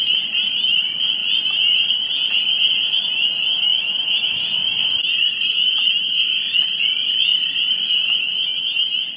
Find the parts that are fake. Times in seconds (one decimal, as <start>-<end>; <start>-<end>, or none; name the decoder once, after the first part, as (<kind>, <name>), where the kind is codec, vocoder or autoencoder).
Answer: 3.7-6.7 (vocoder, BigVGAN v2); 7.3-8.4

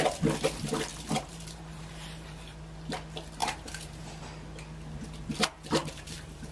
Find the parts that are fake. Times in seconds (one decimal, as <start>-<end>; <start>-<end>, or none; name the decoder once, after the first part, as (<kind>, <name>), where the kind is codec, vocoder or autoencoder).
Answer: 0.9-2.6 (vocoder, BigVGAN v2); 3.4-4.2; 5.8-6.5